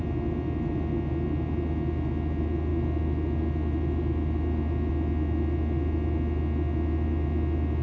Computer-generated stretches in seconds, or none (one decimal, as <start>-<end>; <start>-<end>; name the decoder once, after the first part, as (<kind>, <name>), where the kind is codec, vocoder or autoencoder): none